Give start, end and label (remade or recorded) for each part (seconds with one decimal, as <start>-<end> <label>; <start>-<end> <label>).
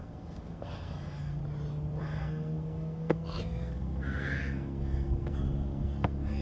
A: 0.0-1.4 remade; 1.4-2.0 recorded; 2.0-6.4 remade